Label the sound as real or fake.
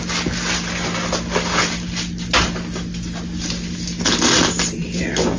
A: real